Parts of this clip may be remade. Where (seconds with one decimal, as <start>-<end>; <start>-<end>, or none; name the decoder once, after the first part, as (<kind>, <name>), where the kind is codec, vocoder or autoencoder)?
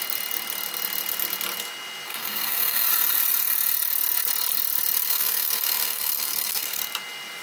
2.1-2.9 (codec, SNAC); 5.0-6.8